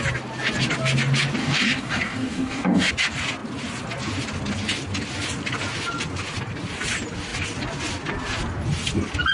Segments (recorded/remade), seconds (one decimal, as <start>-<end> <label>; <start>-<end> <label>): 0.0-1.4 recorded; 1.4-2.9 remade; 2.9-9.3 recorded